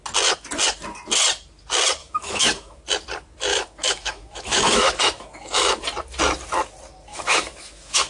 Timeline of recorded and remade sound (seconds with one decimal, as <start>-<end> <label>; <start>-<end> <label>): 0.0-2.0 recorded; 2.0-2.8 remade; 2.8-3.5 recorded; 3.5-5.8 remade; 5.8-7.1 recorded; 7.1-8.1 remade